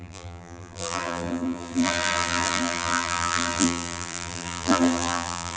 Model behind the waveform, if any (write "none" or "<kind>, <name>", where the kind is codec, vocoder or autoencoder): vocoder, BigVGAN v2